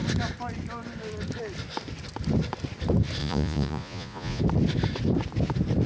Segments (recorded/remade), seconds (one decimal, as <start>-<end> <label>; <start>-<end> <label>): 0.0-3.2 recorded; 3.2-4.4 remade; 4.4-5.9 recorded